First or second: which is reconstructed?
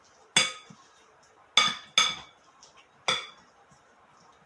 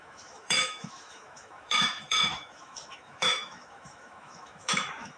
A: second